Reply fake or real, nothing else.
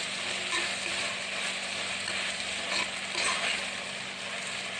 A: real